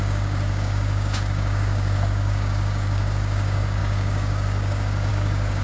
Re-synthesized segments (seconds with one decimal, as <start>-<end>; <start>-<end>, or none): 0.0-5.6